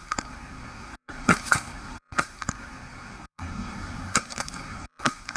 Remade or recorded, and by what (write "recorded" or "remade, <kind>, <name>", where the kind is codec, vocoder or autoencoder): remade, codec, SNAC